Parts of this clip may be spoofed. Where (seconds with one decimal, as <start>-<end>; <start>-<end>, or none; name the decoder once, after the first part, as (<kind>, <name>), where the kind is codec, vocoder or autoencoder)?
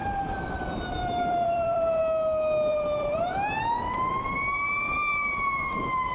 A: 0.0-2.0 (vocoder, BigVGAN v2); 2.7-3.6